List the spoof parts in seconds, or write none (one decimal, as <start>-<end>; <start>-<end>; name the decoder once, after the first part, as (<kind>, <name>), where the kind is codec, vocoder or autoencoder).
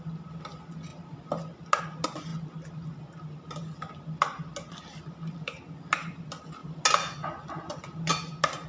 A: none